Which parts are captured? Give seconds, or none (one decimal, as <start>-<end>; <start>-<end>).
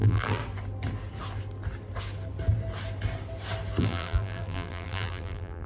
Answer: 0.4-3.8